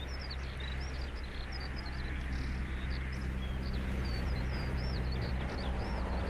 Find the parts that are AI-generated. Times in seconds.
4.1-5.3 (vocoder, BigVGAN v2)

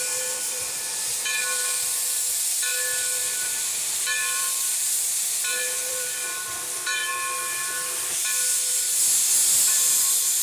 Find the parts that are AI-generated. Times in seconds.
0.0-2.7 (vocoder, BigVGAN v2); 3.2-7.1; 9.7-10.4